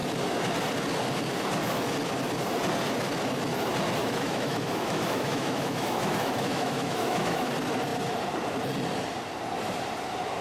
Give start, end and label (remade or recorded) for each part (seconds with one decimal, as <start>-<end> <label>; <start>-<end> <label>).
0.0-4.0 recorded; 4.0-7.5 remade; 7.5-10.4 recorded